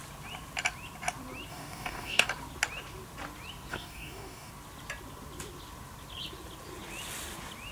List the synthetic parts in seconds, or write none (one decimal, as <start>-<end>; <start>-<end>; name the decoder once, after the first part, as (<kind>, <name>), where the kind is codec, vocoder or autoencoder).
1.5-2.3 (codec, DAC); 3.7-4.5